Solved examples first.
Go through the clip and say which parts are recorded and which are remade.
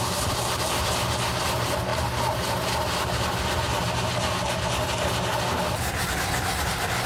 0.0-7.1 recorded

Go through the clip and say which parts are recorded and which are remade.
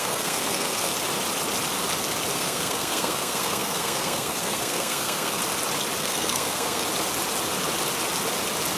0.0-0.9 remade; 0.9-2.3 recorded; 2.3-5.4 remade; 5.4-6.0 recorded; 6.0-6.8 remade; 6.8-8.8 recorded